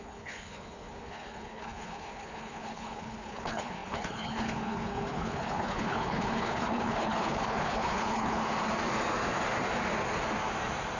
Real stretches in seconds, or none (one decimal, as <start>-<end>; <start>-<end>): 8.4-11.0